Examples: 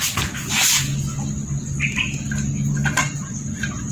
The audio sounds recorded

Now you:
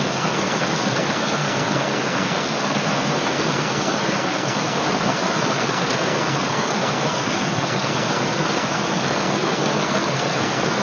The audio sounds remade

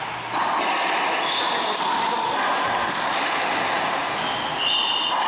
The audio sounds recorded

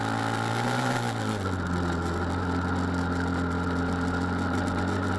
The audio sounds recorded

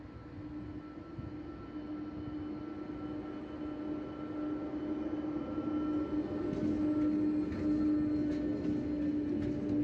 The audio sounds recorded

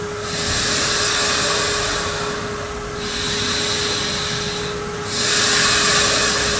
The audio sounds recorded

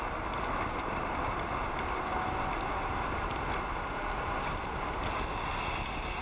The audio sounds recorded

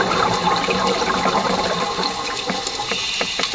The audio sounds recorded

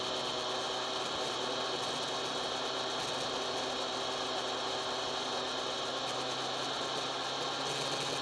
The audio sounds recorded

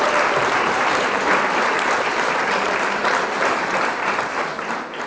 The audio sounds remade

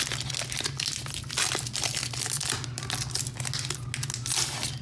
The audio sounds recorded